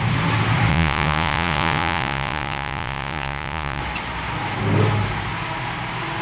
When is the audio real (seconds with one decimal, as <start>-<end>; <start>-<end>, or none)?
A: 0.0-0.7; 3.8-6.2